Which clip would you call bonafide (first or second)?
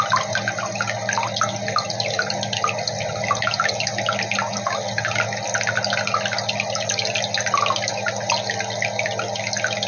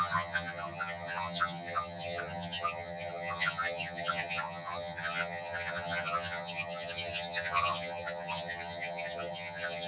first